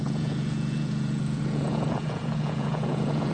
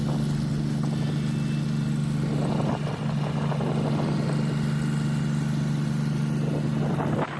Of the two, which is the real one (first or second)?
second